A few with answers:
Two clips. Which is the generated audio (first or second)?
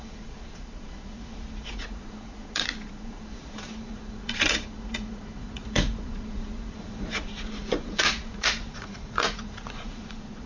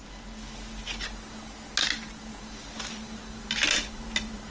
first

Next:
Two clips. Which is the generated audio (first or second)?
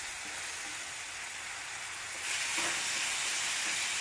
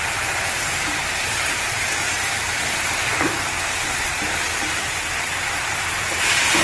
second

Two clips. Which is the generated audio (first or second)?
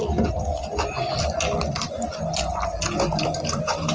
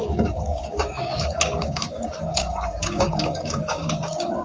second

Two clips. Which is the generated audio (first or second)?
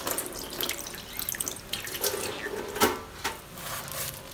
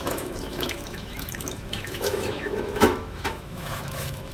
second